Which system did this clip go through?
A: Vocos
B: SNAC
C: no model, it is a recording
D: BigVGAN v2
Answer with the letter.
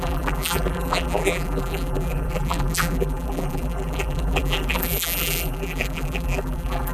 D